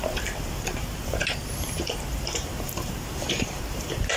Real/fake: fake